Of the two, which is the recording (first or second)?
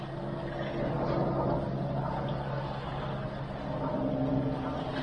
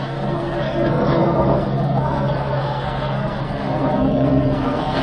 first